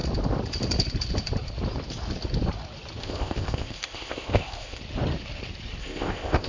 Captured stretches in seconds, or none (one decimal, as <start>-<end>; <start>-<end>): 0.0-3.0; 4.8-5.8